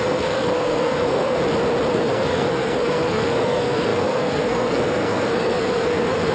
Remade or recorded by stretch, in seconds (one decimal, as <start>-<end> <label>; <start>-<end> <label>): 0.0-1.4 remade; 1.4-1.9 recorded; 1.9-6.3 remade